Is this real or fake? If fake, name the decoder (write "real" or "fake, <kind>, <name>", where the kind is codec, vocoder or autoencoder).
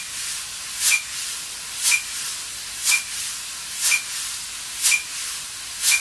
real